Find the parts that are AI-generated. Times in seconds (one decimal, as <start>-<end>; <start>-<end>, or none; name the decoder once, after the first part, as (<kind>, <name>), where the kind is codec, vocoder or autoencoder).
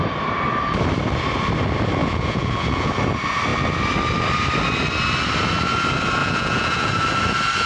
2.0-2.9 (vocoder, Vocos); 6.2-6.9